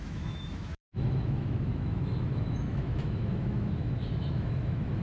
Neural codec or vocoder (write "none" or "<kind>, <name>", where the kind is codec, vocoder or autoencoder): autoencoder, DAC-VAE